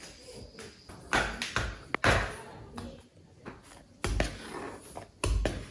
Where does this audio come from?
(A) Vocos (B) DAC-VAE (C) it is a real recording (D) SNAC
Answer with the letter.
C